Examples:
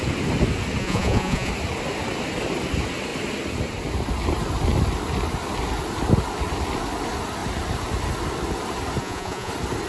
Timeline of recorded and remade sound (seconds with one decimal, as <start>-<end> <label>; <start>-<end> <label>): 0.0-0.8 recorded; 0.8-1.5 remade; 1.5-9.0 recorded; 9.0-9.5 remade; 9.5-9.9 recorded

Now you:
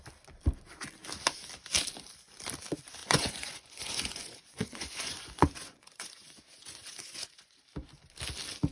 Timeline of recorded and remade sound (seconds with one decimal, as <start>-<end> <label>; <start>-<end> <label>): 0.0-3.0 recorded; 3.0-7.6 remade; 7.6-8.7 recorded

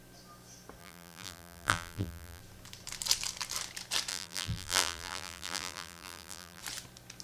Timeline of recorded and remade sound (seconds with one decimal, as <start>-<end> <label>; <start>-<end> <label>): 0.0-0.8 recorded; 0.8-2.4 remade; 2.4-4.1 recorded; 4.1-6.6 remade; 6.6-7.2 recorded

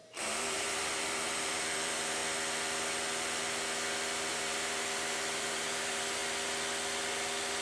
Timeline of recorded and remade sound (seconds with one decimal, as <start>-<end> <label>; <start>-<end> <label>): 0.0-2.2 remade; 2.2-4.3 recorded; 4.3-6.2 remade; 6.2-7.6 recorded

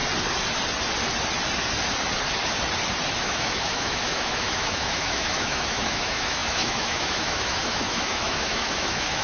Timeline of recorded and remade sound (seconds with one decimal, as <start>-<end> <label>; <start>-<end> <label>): 0.0-3.2 recorded; 3.2-9.2 remade

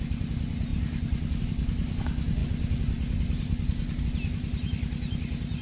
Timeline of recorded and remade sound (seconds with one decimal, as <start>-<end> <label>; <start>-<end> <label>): 0.0-0.7 recorded; 0.7-1.4 remade; 1.4-5.6 recorded

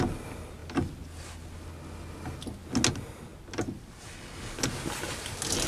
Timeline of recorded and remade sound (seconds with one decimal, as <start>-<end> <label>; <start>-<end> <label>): 0.0-5.7 recorded